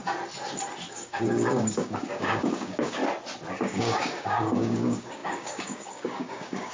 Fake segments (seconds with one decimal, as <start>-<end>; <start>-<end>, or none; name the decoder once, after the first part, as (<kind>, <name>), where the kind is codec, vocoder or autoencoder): 0.9-3.0 (codec, DAC); 3.5-6.7